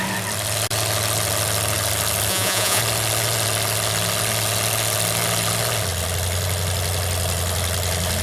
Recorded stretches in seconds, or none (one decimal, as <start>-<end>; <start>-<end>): 0.0-2.3; 2.8-8.2

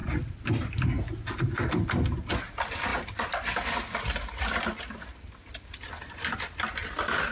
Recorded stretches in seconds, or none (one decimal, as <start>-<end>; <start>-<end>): 0.0-7.3

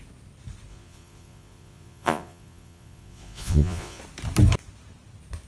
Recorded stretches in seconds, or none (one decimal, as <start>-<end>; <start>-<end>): 0.0-0.7; 4.0-5.5

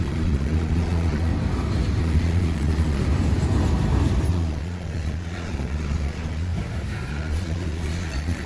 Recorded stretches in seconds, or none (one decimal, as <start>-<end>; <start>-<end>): 1.3-2.0; 3.0-4.3; 6.5-7.1

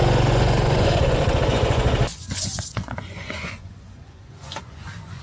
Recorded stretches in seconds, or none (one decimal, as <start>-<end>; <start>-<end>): none

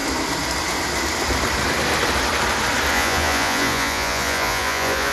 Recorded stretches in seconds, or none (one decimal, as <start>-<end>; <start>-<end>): 0.0-2.9

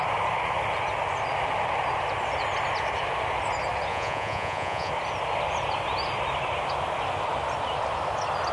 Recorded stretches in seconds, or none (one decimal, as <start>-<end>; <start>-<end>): 0.0-3.9; 4.9-8.5